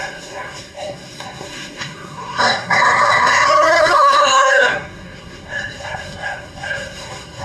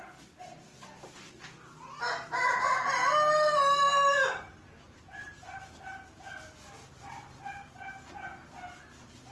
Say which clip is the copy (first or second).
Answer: first